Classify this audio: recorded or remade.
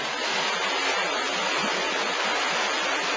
recorded